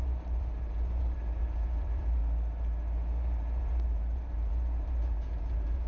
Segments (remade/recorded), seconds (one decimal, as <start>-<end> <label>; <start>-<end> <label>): 0.0-2.2 remade; 2.2-3.2 recorded; 3.2-5.9 remade